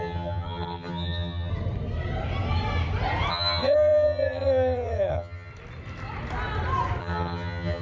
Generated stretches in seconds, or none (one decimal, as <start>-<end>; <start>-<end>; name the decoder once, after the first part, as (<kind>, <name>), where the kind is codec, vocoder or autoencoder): 0.0-1.5 (vocoder, HiFi-GAN); 3.3-5.5; 7.0-7.8